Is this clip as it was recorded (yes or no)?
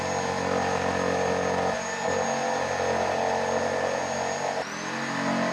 yes